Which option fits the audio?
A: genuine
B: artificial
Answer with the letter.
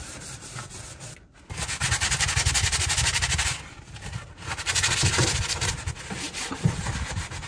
A